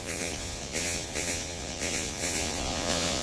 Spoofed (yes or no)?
yes